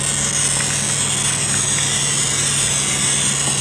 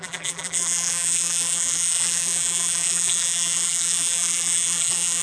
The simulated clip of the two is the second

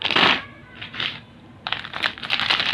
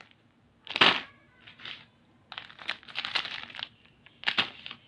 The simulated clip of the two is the first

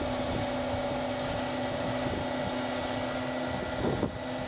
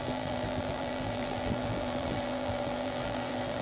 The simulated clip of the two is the second